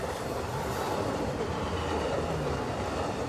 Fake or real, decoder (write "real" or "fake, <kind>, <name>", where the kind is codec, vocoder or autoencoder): real